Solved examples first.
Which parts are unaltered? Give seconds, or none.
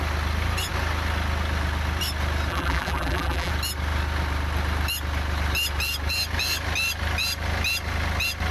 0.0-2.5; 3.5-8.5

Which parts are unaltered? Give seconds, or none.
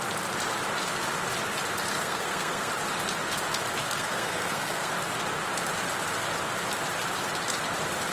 0.0-1.9; 2.7-3.8; 4.9-8.1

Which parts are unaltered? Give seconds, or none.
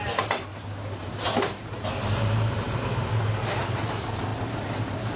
none